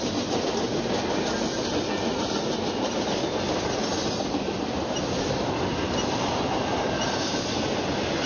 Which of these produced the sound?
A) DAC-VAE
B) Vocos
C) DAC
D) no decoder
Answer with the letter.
D